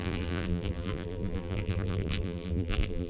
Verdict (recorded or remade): remade